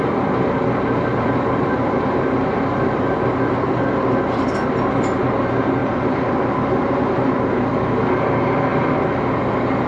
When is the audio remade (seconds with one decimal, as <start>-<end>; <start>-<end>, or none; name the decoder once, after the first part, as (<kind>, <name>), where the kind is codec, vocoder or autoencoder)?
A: 1.1-4.5 (vocoder, BigVGAN v2); 5.8-7.3; 8.7-9.2